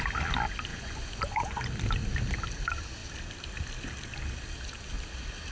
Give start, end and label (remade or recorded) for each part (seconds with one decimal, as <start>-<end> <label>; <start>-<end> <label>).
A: 0.0-0.7 recorded; 0.7-1.6 remade; 1.6-5.5 recorded